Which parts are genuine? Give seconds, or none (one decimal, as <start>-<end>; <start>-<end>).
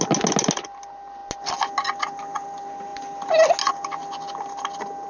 0.0-5.1